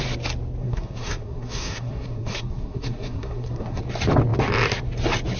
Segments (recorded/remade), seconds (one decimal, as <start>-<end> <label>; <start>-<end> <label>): 0.0-0.6 recorded; 0.6-3.8 remade; 3.8-5.4 recorded